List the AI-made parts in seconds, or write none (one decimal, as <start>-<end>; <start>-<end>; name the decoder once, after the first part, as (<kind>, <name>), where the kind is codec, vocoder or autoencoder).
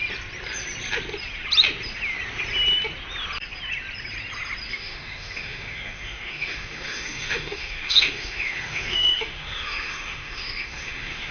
4.7-11.3 (autoencoder, DAC-VAE)